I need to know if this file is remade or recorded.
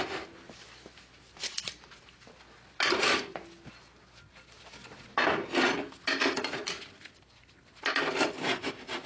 recorded